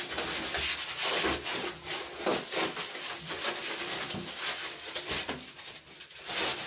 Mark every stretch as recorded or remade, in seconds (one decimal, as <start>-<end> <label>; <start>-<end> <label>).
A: 0.0-2.3 recorded; 2.3-6.3 remade; 6.3-6.7 recorded